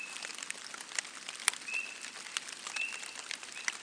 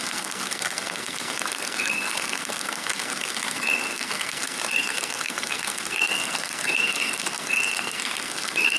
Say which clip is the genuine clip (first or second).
first